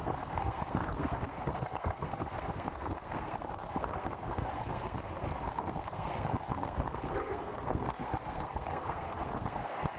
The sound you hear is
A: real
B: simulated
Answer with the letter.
B